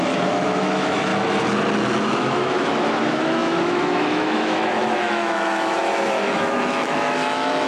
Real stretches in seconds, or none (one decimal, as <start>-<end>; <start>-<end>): 1.1-2.0